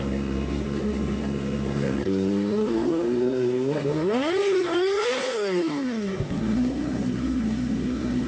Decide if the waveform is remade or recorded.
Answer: remade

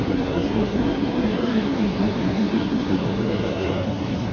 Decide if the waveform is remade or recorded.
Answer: remade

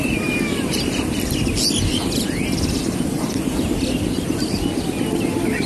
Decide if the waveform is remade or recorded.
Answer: recorded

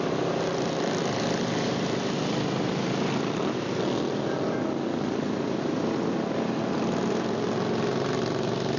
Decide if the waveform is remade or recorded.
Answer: recorded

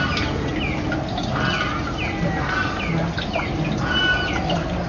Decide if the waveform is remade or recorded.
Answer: recorded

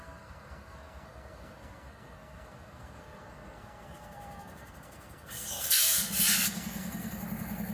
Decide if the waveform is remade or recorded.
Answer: remade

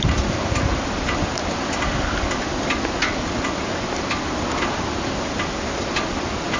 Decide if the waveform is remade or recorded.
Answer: recorded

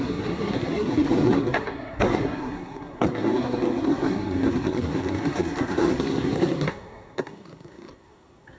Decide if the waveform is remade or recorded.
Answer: remade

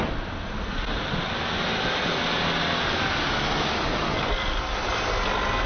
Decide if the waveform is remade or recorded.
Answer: recorded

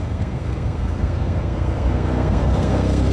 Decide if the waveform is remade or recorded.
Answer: remade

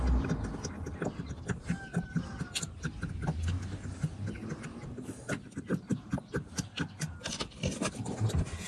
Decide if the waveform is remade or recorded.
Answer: recorded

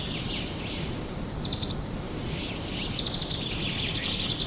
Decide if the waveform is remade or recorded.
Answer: recorded